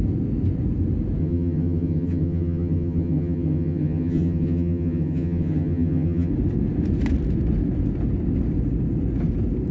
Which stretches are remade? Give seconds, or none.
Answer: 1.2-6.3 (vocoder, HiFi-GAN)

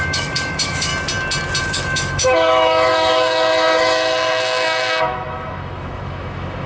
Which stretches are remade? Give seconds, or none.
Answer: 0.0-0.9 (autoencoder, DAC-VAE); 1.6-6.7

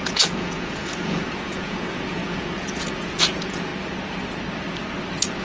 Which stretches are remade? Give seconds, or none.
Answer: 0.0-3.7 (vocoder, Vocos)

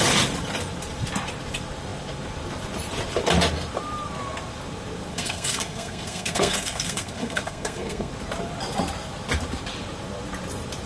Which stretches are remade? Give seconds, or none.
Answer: 5.1-8.1 (codec, SNAC)

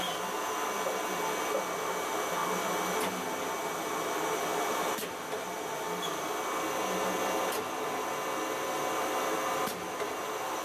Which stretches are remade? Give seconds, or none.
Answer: none